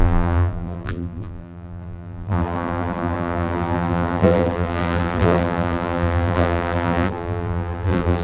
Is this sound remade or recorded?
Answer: remade